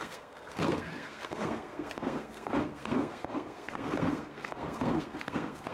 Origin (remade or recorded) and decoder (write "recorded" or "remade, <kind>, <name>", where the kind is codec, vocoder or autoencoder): remade, codec, SNAC